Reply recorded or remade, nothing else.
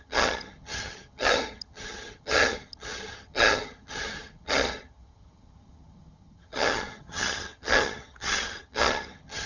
remade